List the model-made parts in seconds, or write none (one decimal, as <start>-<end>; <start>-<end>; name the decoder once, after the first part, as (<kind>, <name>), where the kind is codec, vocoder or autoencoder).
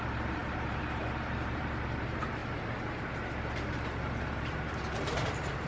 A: 0.0-2.4 (vocoder, BigVGAN v2); 3.3-5.7